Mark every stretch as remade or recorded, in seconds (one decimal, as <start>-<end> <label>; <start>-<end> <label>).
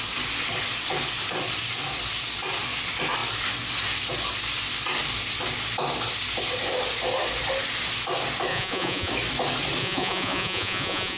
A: 0.0-8.5 recorded; 8.5-9.1 remade; 9.1-9.8 recorded; 9.8-11.2 remade